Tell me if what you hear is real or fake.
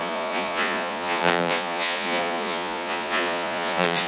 fake